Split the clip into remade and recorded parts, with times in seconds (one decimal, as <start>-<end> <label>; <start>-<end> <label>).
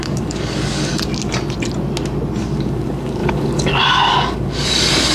0.0-0.9 remade; 0.9-2.4 recorded; 2.4-5.1 remade